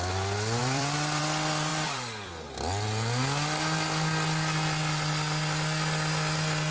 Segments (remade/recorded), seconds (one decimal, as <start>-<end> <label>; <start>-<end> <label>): 0.0-0.6 recorded; 0.6-1.2 remade; 1.2-1.7 recorded; 1.7-2.3 remade; 2.3-6.7 recorded